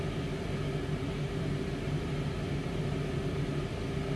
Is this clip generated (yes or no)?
no